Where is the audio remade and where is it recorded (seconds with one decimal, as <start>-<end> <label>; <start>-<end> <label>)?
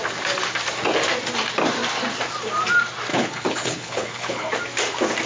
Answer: 0.0-3.1 recorded; 3.1-4.5 remade; 4.5-5.3 recorded